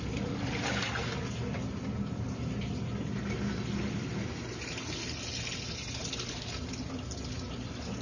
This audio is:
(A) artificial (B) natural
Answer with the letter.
B